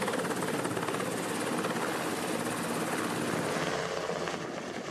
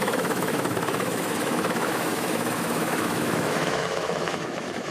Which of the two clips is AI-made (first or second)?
second